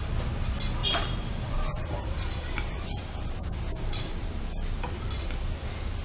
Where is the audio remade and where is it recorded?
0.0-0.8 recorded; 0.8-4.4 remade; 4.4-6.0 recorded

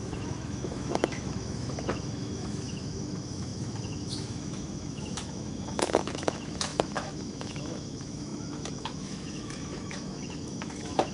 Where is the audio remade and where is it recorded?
0.0-11.1 remade

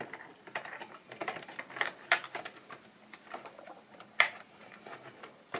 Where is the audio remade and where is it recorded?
0.0-5.6 recorded

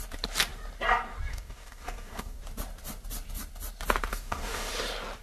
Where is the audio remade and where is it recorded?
0.0-1.3 recorded; 1.3-2.4 remade; 2.4-4.1 recorded; 4.1-4.7 remade; 4.7-5.2 recorded

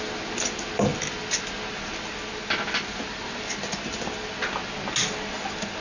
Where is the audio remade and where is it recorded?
0.0-5.8 recorded

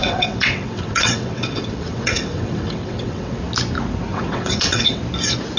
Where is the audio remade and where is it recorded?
0.0-3.4 remade; 3.4-4.1 recorded; 4.1-5.0 remade; 5.0-5.6 recorded